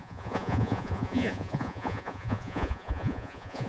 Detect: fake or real fake